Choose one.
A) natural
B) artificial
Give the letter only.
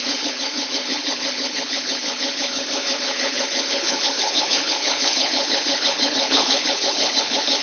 B